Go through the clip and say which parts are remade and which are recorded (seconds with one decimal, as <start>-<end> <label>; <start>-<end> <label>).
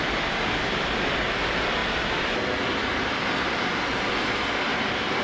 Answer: 0.0-4.7 recorded; 4.7-5.2 remade